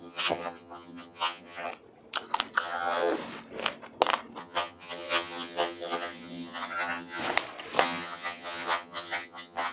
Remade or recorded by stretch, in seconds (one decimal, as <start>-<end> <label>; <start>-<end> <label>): 0.0-1.7 remade; 1.7-2.6 recorded; 2.6-3.1 remade; 3.1-4.4 recorded; 4.4-7.2 remade; 7.2-7.8 recorded; 7.8-9.7 remade

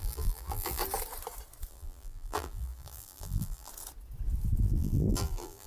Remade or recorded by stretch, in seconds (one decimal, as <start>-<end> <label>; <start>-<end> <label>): 0.0-0.8 remade; 0.8-1.7 recorded; 1.7-3.7 remade; 3.7-4.6 recorded; 4.6-5.7 remade

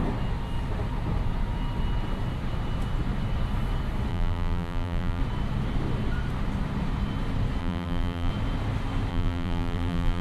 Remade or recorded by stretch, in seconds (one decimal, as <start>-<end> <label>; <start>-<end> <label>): 0.0-4.1 recorded; 4.1-5.2 remade; 5.2-7.6 recorded; 7.6-8.3 remade; 8.3-9.1 recorded; 9.1-10.2 remade

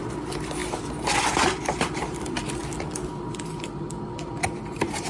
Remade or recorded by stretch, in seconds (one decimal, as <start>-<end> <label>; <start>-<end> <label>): 0.0-2.6 remade; 2.6-3.3 recorded; 3.3-5.1 remade

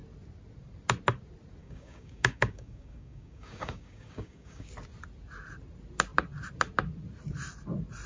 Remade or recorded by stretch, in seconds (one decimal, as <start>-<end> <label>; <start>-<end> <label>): 0.0-1.6 recorded; 1.6-4.7 remade; 4.7-8.1 recorded

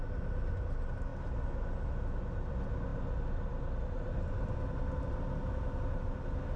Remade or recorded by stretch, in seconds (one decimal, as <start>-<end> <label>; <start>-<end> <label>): 0.0-6.6 recorded

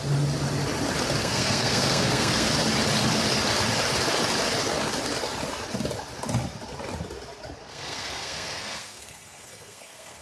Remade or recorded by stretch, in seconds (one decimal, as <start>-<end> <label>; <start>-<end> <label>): 0.0-1.2 recorded; 1.2-2.5 remade; 2.5-7.6 recorded; 7.6-10.2 remade